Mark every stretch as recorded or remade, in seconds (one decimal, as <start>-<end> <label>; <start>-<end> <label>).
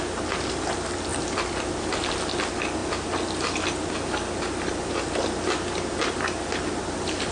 0.0-7.3 recorded